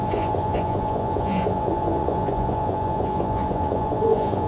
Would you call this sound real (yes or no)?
no